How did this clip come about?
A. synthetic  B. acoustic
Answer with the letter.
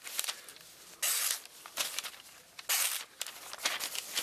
B